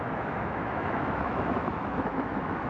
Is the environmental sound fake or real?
fake